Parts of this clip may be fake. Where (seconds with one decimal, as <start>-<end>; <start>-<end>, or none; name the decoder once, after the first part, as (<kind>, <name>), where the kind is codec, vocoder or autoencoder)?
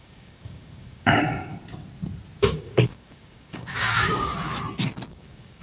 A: 0.0-1.5 (codec, DAC); 2.4-4.3; 5.1-5.6